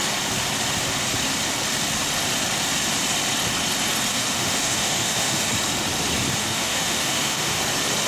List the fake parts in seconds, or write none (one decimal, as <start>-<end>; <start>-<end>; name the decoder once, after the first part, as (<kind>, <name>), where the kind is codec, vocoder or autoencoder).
4.1-5.5 (autoencoder, DAC-VAE); 6.4-7.6